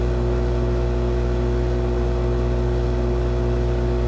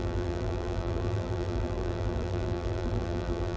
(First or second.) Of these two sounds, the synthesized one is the second